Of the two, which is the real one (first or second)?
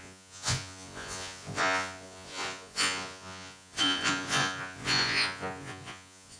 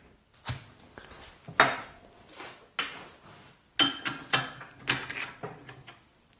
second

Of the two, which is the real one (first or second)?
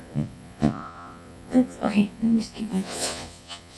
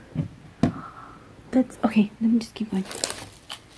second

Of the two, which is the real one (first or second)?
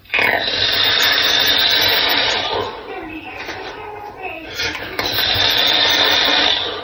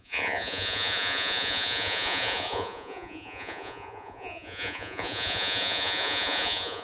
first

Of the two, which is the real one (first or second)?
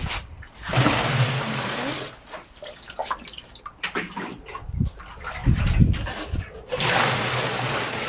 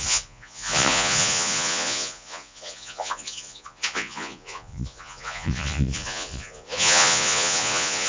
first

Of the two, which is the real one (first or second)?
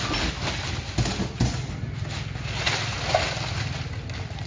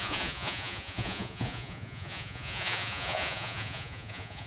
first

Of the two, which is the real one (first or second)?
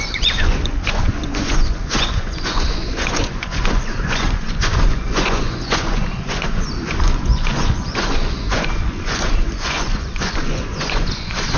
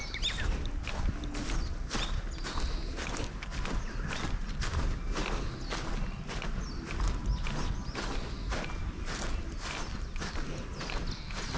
second